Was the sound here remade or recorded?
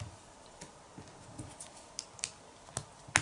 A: recorded